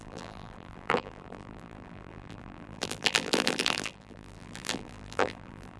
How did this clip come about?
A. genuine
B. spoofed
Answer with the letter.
B